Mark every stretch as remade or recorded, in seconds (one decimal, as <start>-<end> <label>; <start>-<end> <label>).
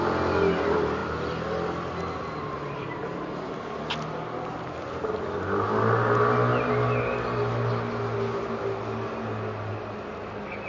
0.0-10.7 recorded